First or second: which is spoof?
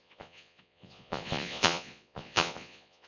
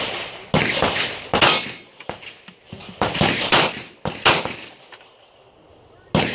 first